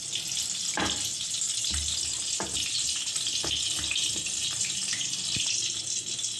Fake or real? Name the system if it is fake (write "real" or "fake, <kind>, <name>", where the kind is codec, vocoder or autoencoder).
real